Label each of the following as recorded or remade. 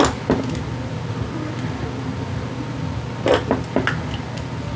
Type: recorded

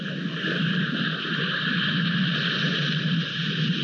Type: recorded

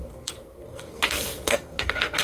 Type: remade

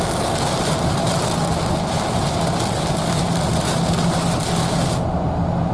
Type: recorded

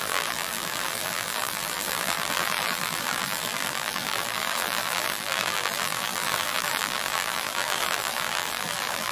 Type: remade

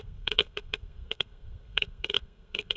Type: remade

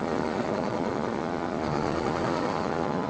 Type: remade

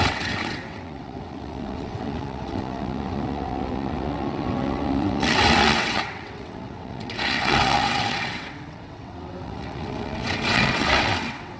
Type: remade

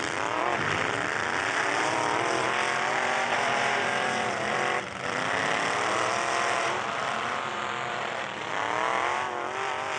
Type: remade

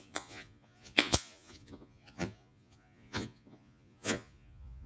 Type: remade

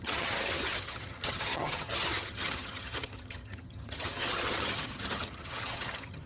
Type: remade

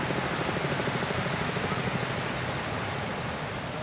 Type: recorded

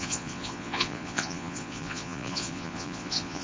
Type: remade